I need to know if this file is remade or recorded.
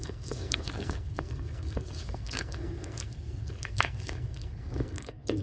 remade